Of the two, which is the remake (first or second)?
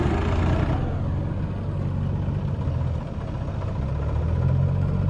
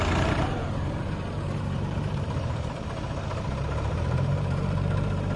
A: second